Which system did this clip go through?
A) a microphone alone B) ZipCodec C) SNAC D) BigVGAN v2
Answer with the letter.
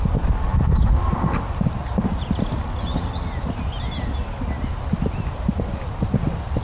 A